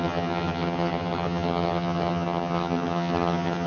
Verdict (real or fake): fake